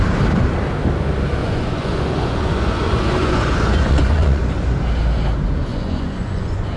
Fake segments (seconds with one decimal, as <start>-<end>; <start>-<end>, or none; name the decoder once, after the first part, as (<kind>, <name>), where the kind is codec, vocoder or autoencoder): 1.4-4.4 (vocoder, Vocos); 5.7-6.8